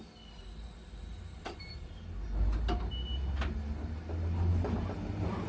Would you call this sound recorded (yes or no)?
yes